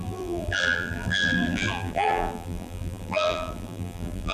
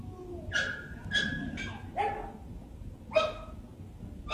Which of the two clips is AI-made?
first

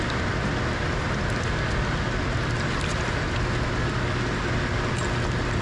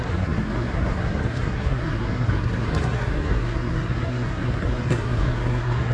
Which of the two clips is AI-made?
second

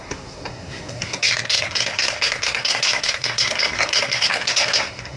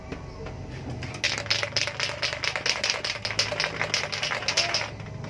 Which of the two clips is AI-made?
first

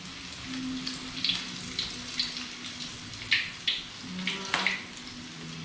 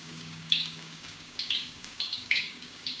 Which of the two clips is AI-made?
second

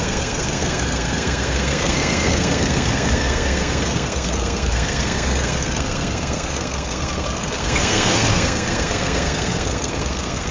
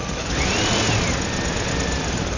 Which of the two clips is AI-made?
first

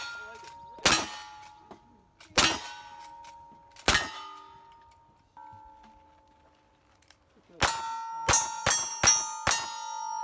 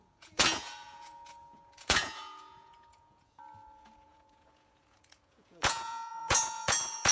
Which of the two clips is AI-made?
second